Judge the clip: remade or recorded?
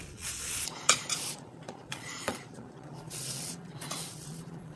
remade